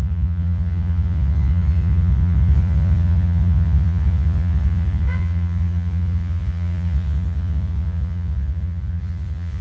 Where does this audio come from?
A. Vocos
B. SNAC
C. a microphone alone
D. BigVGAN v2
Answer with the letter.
A